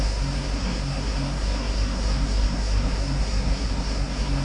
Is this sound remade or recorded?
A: remade